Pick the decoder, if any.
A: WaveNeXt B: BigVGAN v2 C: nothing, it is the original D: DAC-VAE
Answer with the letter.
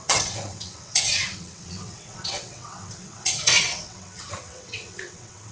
A